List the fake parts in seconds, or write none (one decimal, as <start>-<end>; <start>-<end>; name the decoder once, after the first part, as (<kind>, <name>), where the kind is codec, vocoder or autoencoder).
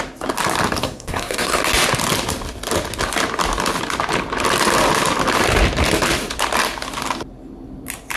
0.8-1.6 (codec, SNAC)